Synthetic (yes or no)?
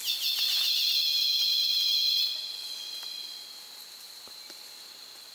no